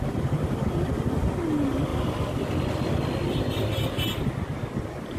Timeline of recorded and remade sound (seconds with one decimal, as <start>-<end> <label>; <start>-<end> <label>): 0.0-5.2 recorded